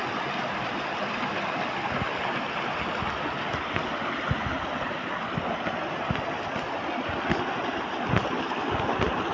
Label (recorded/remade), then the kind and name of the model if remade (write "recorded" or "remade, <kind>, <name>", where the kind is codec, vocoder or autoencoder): recorded